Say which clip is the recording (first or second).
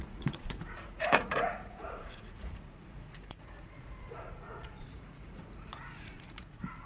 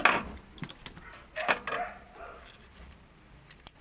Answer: second